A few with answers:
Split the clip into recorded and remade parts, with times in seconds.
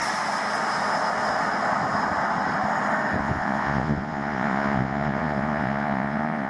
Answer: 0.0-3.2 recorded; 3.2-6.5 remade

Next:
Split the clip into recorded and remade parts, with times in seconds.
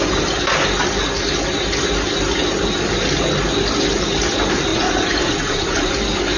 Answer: 0.0-4.7 recorded; 4.7-5.9 remade; 5.9-6.4 recorded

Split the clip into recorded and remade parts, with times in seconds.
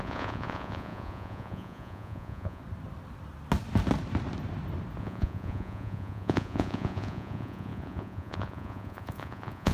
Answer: 0.0-2.6 remade; 2.6-5.0 recorded; 5.0-9.7 remade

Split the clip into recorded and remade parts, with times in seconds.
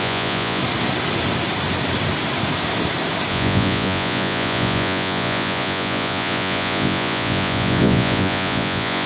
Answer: 0.0-0.6 remade; 0.6-3.3 recorded; 3.3-9.1 remade